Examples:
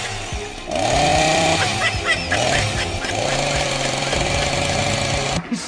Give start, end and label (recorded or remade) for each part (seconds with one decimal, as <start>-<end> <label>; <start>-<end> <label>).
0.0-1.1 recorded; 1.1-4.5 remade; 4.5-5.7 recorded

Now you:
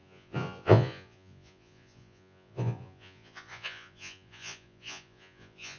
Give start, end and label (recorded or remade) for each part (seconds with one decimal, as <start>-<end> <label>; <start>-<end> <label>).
0.0-5.8 remade

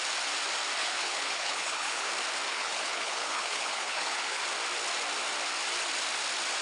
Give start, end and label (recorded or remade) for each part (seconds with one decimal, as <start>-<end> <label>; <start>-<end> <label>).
0.0-0.8 recorded; 0.8-2.1 remade; 2.1-2.5 recorded; 2.5-4.4 remade; 4.4-6.6 recorded

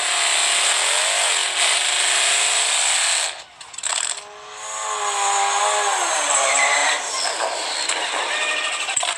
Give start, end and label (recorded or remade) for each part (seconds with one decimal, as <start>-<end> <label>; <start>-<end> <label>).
0.0-9.2 recorded

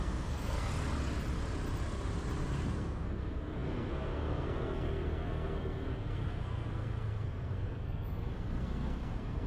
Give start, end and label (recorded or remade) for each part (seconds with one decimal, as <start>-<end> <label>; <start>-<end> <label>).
0.0-0.7 remade; 0.7-2.7 recorded; 2.7-9.5 remade

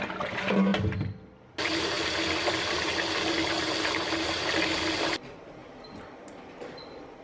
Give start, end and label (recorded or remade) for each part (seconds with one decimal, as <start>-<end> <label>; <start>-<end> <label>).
0.0-7.2 recorded